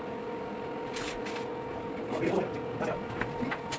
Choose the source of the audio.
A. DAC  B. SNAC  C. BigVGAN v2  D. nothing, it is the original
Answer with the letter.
D